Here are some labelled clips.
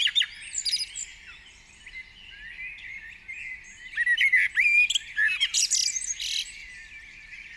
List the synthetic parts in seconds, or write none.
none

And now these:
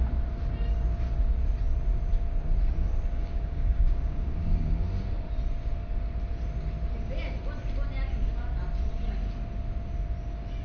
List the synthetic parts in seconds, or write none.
3.1-4.8 (codec, DAC)

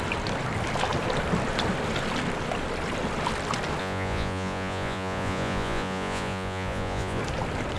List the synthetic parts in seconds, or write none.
3.8-7.2 (vocoder, Vocos)

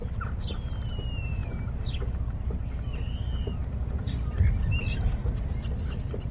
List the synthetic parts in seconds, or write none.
none

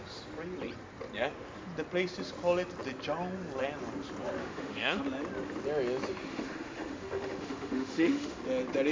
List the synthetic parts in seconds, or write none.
4.4-5.0 (autoencoder, DAC-VAE); 6.3-8.4